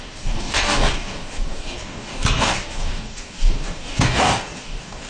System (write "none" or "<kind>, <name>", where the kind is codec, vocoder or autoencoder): codec, DAC